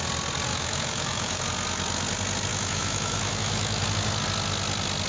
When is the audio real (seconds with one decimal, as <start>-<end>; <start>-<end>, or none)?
0.0-0.5; 1.4-2.5; 3.8-5.1